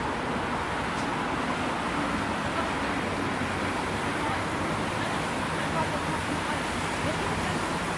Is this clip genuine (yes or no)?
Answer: yes